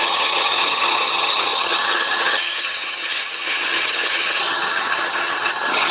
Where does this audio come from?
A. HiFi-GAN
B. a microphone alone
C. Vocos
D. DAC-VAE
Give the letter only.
A